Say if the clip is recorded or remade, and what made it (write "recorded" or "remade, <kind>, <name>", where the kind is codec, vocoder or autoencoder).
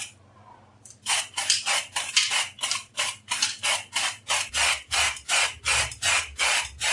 recorded